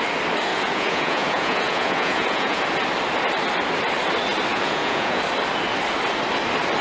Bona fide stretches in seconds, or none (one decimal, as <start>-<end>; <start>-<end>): 0.0-0.5; 2.6-4.5; 5.2-6.8